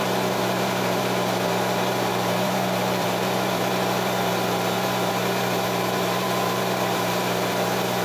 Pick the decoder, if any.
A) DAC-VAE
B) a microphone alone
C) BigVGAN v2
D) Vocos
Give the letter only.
C